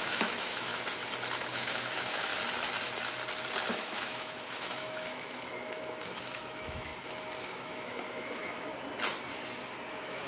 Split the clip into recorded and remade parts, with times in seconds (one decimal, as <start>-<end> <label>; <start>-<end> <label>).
0.0-0.7 remade; 0.7-1.5 recorded; 1.5-2.3 remade; 2.3-3.7 recorded; 3.7-6.9 remade; 6.9-7.4 recorded; 7.4-8.7 remade; 8.7-9.9 recorded; 9.9-10.3 remade